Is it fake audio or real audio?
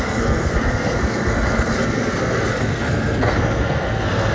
fake